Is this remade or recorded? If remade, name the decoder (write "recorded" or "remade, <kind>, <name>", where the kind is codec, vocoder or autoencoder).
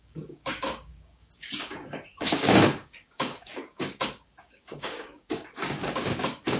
remade, codec, DAC